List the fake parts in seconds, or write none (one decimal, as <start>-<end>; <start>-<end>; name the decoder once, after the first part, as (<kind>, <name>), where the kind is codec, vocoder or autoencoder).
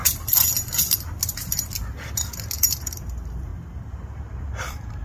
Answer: 2.6-3.5 (vocoder, BigVGAN v2); 4.4-5.0